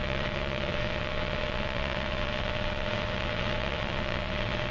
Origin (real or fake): fake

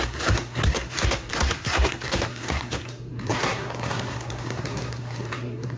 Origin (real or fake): fake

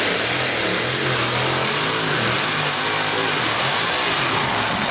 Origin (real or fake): real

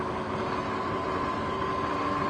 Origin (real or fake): real